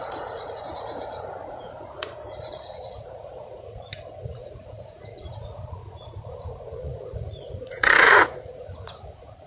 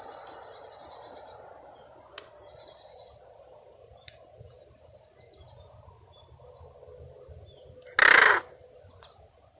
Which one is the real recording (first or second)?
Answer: second